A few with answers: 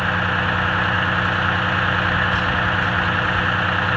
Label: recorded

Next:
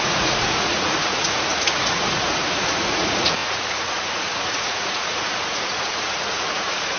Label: remade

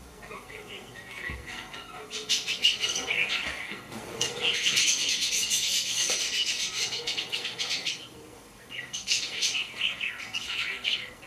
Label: remade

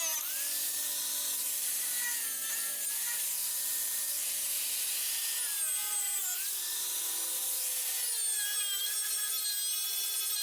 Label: recorded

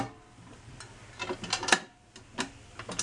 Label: recorded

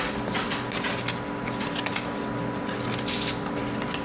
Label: recorded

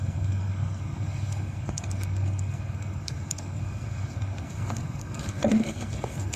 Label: remade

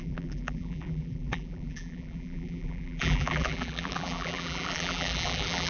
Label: remade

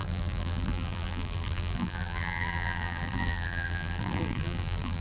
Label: remade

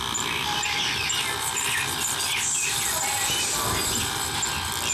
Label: recorded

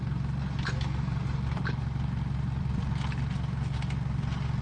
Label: recorded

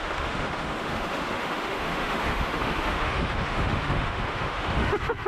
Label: remade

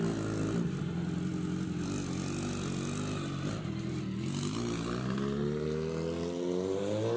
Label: recorded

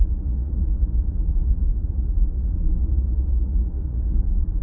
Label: remade